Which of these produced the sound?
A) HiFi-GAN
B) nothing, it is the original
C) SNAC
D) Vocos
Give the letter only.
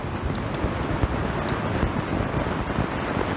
B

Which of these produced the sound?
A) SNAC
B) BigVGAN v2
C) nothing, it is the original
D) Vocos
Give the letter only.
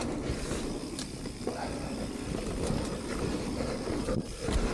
C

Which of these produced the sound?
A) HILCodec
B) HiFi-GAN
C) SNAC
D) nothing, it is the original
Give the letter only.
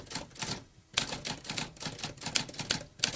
D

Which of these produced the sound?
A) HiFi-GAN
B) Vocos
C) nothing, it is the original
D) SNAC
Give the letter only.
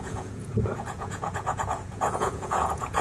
B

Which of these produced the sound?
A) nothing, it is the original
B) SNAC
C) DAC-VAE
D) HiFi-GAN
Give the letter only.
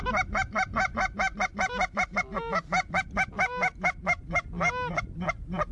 A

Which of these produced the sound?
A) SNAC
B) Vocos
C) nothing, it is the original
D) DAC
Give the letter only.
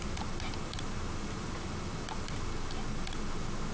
C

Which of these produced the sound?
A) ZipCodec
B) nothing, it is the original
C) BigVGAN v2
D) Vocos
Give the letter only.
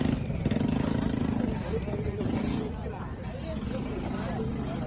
B